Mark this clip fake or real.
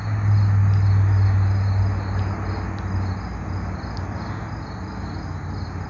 real